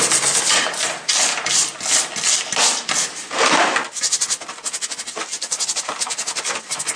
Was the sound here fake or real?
real